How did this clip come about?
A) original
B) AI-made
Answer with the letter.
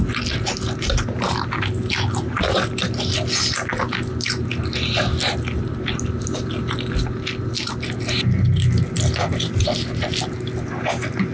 A